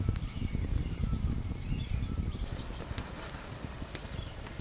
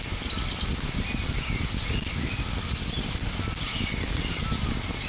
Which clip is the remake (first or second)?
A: first